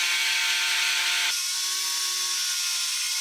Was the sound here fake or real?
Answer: real